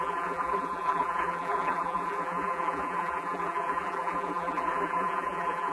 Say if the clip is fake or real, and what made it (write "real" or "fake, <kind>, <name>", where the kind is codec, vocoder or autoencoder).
fake, vocoder, BigVGAN v2